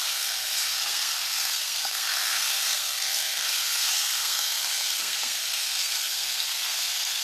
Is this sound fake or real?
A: fake